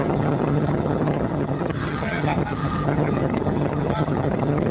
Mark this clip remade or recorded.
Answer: remade